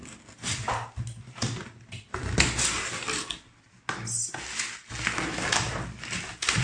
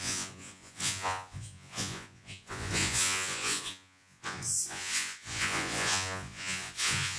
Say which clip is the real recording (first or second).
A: first